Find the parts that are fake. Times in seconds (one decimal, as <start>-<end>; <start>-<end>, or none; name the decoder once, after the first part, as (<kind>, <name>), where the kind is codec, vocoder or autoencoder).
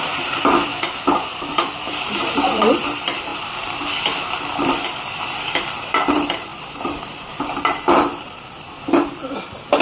0.0-0.7 (vocoder, BigVGAN v2); 1.5-3.3; 5.2-9.8